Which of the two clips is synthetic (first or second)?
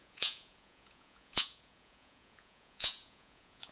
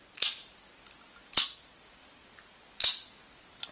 first